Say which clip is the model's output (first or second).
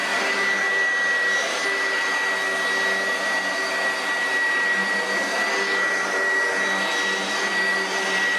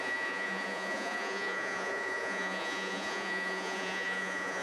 second